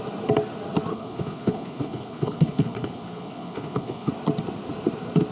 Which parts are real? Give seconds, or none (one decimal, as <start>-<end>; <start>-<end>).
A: 0.0-0.9; 4.1-5.3